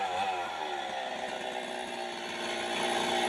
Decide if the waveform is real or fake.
real